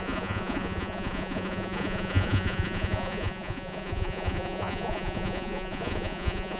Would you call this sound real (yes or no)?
no